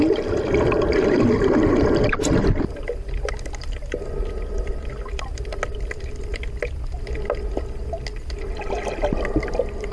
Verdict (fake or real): real